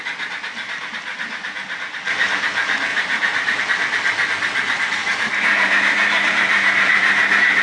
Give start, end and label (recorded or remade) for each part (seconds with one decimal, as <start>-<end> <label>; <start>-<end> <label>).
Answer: 0.0-2.9 recorded; 2.9-3.6 remade; 3.6-5.0 recorded; 5.0-7.6 remade